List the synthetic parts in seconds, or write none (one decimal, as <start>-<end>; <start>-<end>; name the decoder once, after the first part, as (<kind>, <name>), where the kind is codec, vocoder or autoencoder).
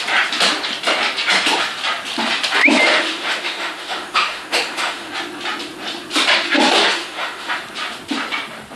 2.9-5.1 (autoencoder, DAC-VAE); 6.8-7.5